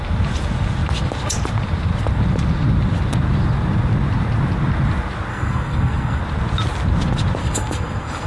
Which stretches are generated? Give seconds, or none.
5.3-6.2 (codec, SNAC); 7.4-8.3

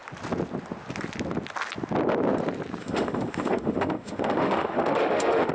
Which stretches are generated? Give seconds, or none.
2.8-5.5 (autoencoder, DAC-VAE)

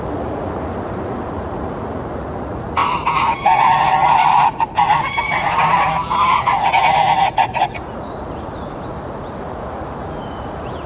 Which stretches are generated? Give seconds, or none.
0.0-10.9 (vocoder, Vocos)